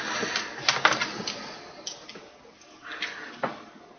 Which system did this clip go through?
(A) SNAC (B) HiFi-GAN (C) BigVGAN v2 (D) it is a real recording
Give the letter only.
D